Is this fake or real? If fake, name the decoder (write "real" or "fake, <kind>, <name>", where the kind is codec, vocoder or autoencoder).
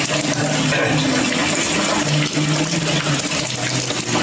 real